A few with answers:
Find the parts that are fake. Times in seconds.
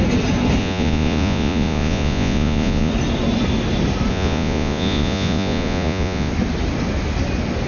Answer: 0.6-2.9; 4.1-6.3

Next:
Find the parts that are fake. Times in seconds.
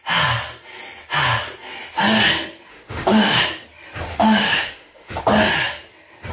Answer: 2.7-3.4; 4.1-5.2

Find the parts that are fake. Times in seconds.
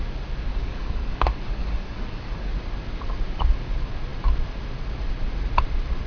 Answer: 0.5-2.5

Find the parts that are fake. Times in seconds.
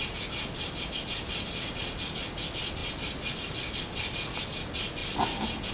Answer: none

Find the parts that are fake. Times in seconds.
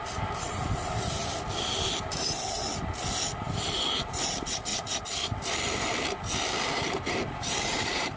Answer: 0.0-1.2; 2.0-2.6; 3.4-4.7; 6.7-8.2